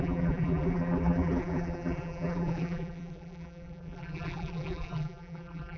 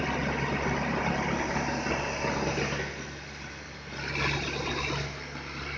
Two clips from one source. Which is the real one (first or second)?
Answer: second